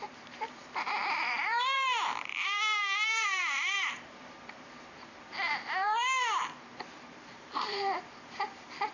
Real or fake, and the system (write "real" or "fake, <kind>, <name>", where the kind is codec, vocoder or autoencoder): fake, vocoder, BigVGAN v2